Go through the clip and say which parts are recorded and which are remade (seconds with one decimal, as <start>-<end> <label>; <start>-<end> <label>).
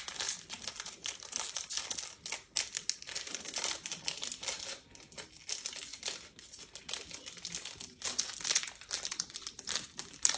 0.0-10.4 recorded